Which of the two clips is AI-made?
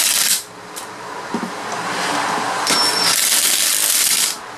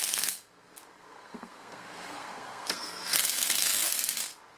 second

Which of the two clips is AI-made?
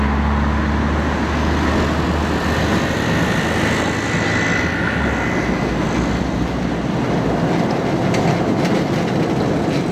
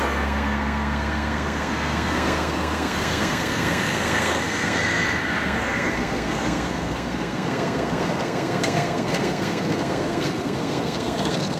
second